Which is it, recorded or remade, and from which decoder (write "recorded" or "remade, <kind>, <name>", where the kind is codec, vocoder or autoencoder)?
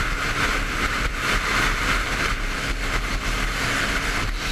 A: remade, vocoder, BigVGAN v2